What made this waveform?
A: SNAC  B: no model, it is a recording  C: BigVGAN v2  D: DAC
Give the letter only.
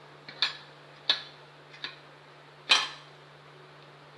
B